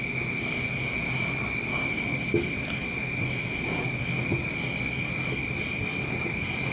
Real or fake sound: real